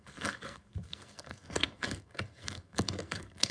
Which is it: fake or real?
fake